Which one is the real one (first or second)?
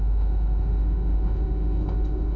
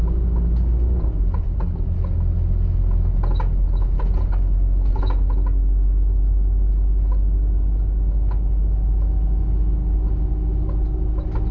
second